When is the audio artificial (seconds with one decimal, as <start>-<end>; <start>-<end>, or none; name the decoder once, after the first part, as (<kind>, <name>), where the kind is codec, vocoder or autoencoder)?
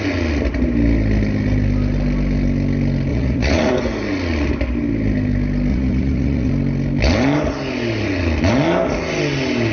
3.1-3.7 (vocoder, Vocos); 5.7-6.5